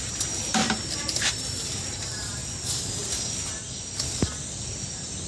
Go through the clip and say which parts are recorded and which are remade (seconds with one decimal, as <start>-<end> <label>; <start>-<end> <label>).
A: 0.0-0.6 remade; 0.6-2.0 recorded; 2.0-2.4 remade; 2.4-5.3 recorded